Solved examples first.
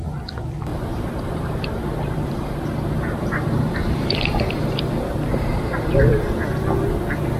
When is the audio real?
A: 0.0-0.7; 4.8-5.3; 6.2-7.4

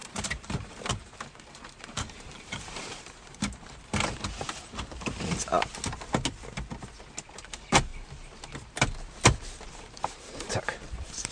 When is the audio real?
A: 5.5-7.3; 7.9-9.7

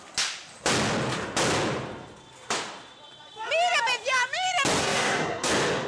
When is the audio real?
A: 0.0-4.8; 5.5-5.9

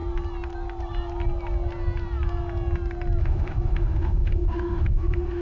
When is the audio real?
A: 0.0-3.2

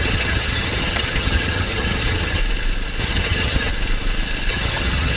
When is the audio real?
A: 2.4-3.0; 3.7-4.5

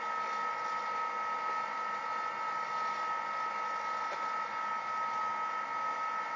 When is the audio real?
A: 0.0-6.4

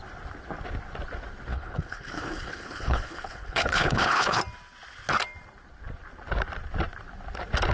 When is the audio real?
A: 0.0-1.5; 4.4-7.7

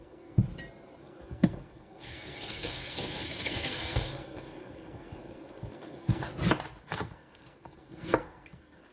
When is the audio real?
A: 0.4-1.0; 6.3-6.8